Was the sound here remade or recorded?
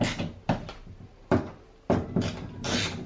recorded